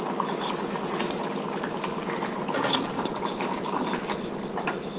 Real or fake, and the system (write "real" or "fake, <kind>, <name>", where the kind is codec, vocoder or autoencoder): real